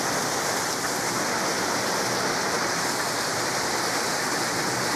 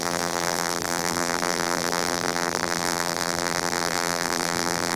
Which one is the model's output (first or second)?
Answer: second